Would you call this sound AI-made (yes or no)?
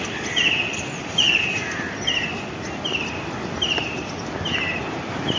no